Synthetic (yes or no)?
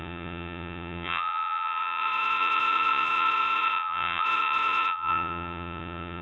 yes